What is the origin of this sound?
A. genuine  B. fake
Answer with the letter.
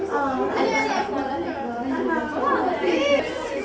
A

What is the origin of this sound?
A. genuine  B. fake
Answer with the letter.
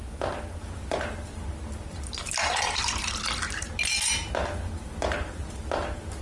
A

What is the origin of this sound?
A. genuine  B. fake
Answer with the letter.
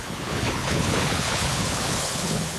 B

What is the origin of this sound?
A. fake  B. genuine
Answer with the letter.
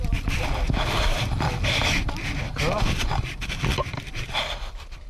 B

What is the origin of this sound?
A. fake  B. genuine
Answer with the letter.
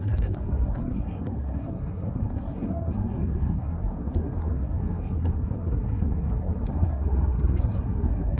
A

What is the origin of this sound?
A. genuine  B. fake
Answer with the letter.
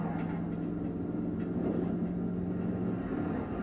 A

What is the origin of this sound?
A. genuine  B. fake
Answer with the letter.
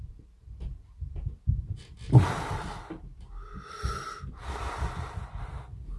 A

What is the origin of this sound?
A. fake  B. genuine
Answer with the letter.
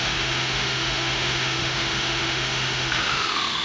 A